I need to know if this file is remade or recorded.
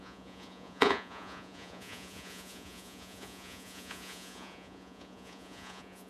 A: remade